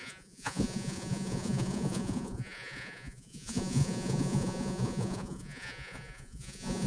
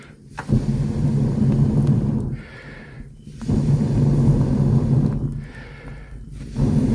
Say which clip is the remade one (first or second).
first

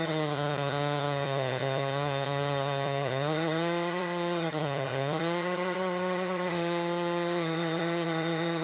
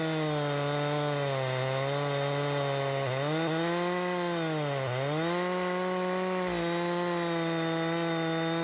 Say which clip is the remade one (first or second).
first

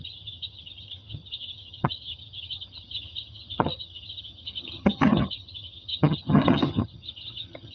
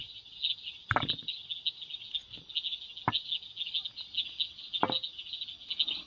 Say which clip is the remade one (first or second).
first